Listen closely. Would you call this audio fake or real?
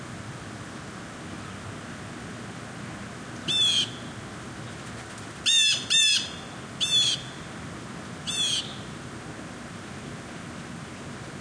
real